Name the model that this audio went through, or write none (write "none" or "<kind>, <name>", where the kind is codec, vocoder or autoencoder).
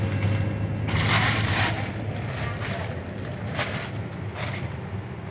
none